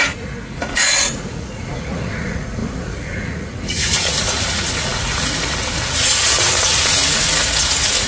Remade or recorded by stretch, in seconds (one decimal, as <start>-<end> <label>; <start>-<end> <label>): 0.0-8.1 remade